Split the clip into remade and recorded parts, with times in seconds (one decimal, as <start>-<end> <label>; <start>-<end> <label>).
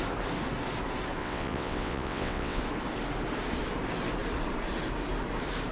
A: 0.0-1.2 recorded; 1.2-2.6 remade; 2.6-5.7 recorded